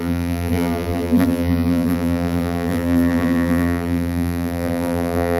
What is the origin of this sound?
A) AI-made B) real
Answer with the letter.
A